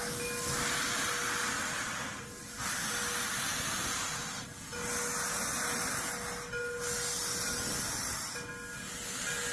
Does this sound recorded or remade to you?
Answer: recorded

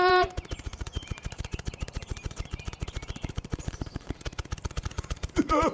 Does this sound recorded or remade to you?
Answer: remade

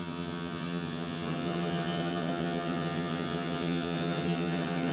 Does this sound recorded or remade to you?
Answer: remade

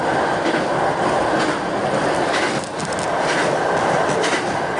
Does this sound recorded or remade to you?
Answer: recorded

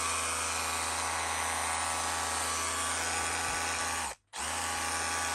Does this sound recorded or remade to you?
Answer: recorded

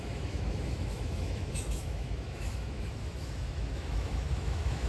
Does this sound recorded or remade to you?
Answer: remade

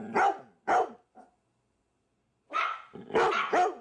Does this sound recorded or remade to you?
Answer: recorded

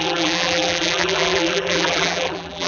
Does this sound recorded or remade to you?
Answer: remade